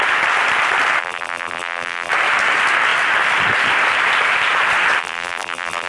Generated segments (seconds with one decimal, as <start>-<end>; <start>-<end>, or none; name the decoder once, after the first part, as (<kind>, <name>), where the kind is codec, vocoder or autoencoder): 1.0-2.1 (vocoder, BigVGAN v2); 5.0-5.9